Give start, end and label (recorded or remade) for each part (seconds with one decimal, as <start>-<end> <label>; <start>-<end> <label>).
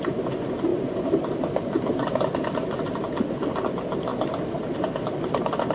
0.0-5.7 recorded